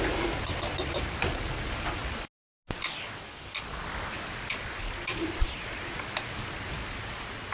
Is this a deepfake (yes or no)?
no